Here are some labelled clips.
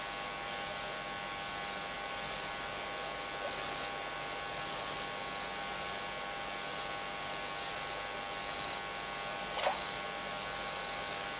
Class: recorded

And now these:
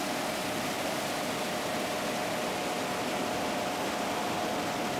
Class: recorded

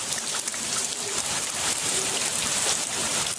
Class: remade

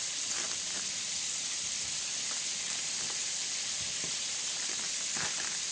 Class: recorded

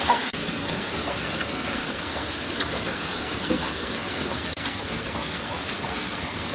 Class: remade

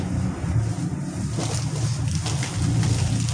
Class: remade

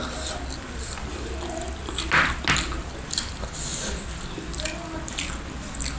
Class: recorded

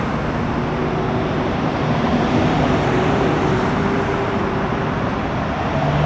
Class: recorded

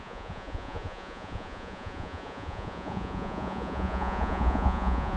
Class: remade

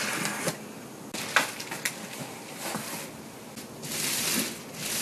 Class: recorded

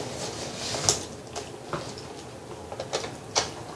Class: recorded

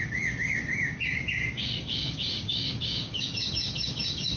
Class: remade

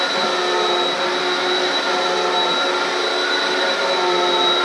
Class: recorded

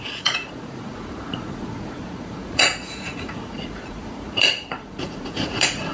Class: remade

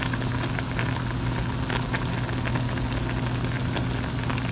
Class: recorded